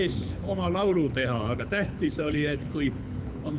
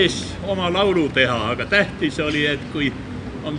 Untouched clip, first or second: second